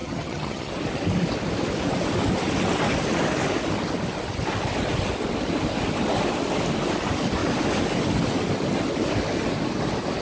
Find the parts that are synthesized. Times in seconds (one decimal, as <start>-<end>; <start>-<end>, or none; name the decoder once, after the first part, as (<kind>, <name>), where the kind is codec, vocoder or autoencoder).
0.0-0.7 (vocoder, HiFi-GAN)